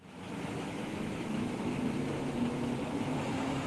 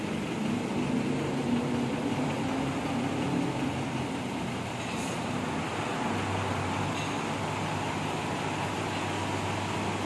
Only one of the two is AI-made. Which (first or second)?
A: first